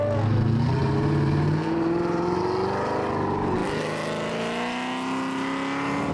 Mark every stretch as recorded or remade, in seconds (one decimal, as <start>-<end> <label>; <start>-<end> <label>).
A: 0.0-0.8 recorded; 0.8-2.4 remade; 2.4-6.1 recorded